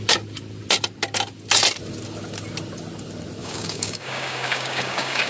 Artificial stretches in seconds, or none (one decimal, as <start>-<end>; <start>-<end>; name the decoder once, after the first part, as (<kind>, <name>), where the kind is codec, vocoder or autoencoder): 3.4-5.3 (codec, DAC)